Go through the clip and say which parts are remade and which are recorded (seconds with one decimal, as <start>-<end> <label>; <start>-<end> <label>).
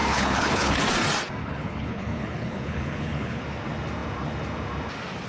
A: 0.0-0.8 remade; 0.8-1.4 recorded; 1.4-3.4 remade; 3.4-5.3 recorded